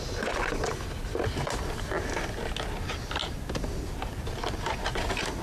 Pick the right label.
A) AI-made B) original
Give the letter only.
B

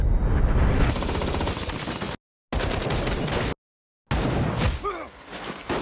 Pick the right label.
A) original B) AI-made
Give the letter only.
A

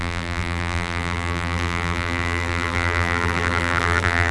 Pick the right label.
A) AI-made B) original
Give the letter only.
A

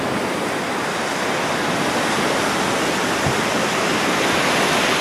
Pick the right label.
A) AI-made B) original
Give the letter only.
B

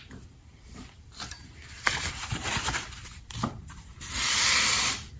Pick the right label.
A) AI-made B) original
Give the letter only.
A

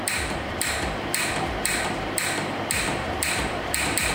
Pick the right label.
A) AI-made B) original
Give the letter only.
A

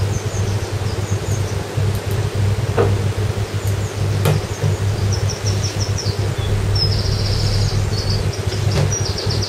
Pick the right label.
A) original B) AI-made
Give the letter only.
A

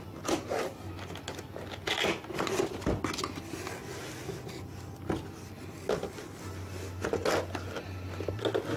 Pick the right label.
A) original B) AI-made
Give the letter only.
A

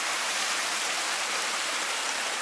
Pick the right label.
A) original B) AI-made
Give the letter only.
B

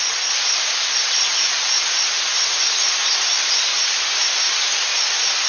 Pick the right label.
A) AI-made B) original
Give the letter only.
B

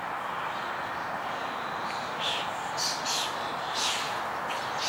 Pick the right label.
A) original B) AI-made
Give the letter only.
A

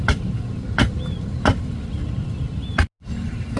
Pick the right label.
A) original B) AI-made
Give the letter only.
A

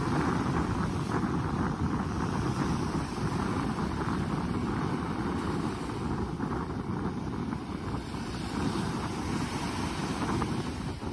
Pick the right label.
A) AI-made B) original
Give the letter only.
A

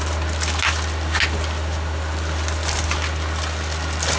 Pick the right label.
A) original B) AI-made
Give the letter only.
A